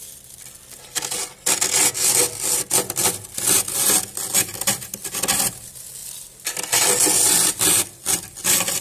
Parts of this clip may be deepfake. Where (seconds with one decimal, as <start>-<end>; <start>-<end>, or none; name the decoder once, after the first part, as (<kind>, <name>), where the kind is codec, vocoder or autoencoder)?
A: none

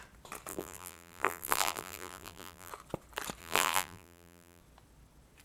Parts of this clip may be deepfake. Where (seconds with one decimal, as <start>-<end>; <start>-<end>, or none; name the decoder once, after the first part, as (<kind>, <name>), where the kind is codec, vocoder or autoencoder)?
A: 0.5-2.7 (vocoder, BigVGAN v2); 3.4-4.6

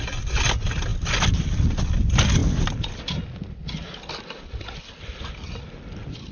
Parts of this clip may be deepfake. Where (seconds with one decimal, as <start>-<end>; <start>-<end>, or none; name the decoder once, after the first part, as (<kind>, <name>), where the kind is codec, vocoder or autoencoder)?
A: none

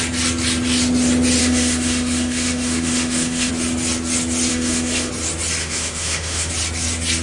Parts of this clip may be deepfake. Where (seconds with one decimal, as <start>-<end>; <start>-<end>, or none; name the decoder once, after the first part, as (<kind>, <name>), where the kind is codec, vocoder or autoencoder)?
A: 1.4-3.5 (autoencoder, DAC-VAE); 4.5-5.1; 5.6-6.5

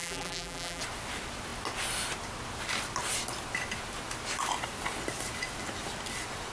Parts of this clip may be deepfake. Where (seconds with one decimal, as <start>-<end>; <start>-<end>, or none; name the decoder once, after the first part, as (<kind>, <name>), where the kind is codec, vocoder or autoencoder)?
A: 0.0-0.8 (vocoder, BigVGAN v2)